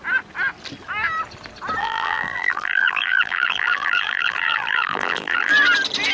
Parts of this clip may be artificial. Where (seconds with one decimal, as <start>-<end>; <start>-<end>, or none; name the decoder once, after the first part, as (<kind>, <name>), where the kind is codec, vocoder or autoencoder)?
1.8-5.5 (vocoder, BigVGAN v2)